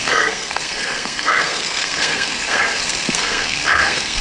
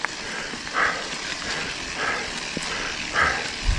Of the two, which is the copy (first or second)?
first